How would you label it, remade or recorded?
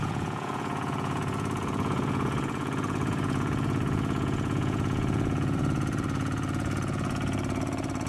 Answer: remade